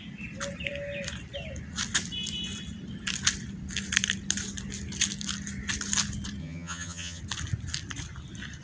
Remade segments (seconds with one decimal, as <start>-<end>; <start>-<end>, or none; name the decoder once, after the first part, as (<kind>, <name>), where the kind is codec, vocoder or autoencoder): 6.4-7.2 (vocoder, HiFi-GAN)